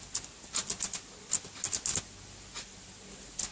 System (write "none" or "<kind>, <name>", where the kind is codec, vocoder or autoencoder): none